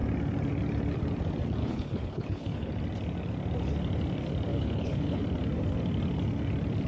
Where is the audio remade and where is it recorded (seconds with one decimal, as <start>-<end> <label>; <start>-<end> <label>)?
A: 0.0-1.6 recorded; 1.6-2.7 remade; 2.7-4.5 recorded; 4.5-5.2 remade; 5.2-6.9 recorded